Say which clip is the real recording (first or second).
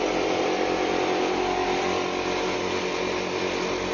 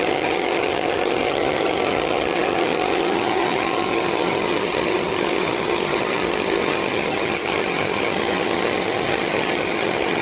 first